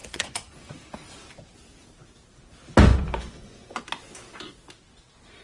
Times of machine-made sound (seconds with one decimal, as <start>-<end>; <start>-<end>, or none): 0.0-0.9; 2.9-3.8